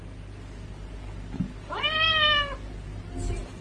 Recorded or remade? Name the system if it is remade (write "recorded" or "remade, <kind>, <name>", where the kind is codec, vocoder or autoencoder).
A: recorded